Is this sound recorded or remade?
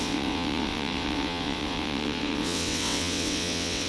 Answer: remade